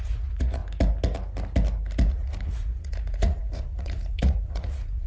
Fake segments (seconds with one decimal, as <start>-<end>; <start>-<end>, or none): 0.0-0.6; 2.1-5.1